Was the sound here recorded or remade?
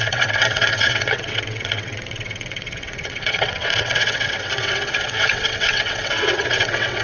remade